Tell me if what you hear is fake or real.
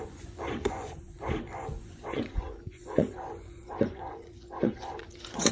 fake